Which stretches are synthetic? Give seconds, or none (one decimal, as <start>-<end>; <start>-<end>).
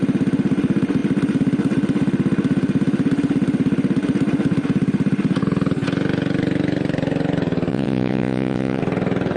7.7-8.8